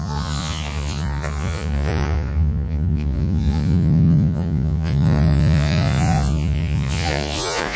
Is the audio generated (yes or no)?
yes